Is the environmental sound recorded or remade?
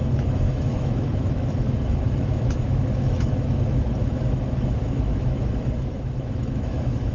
remade